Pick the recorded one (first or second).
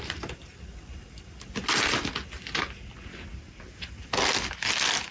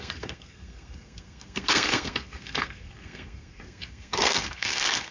first